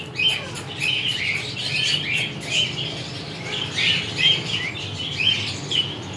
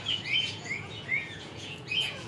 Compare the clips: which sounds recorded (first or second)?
first